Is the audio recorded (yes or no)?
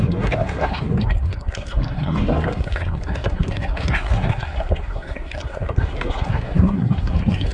no